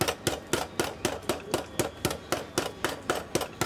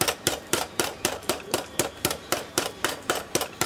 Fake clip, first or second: second